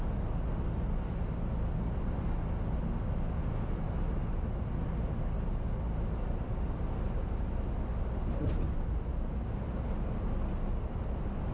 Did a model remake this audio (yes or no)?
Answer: no